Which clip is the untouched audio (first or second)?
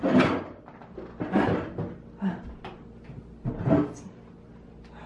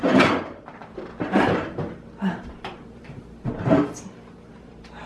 first